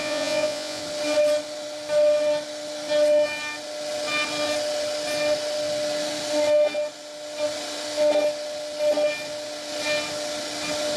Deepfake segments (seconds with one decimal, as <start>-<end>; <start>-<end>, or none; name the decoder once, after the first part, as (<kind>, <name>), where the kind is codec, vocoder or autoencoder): 0.0-0.8 (vocoder, Vocos)